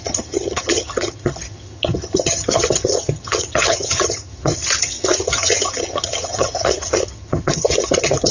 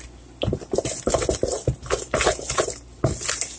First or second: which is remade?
first